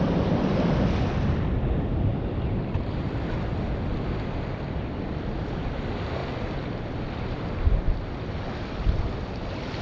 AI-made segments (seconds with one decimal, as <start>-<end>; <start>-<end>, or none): none